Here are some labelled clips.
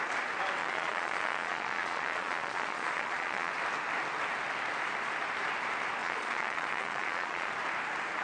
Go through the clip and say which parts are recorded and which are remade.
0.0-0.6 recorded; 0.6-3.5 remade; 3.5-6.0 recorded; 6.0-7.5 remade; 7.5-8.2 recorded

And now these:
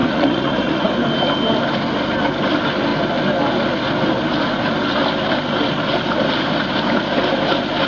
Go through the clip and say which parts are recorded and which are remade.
0.0-0.9 remade; 0.9-7.9 recorded

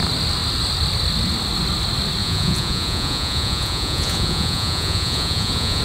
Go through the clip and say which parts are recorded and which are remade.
0.0-2.2 recorded; 2.2-5.8 remade

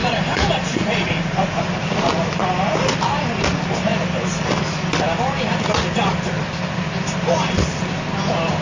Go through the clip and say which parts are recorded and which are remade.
0.0-1.6 remade; 1.6-8.6 recorded